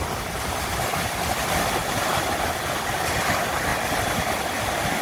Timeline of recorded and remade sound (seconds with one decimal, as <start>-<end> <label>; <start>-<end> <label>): 0.0-5.0 recorded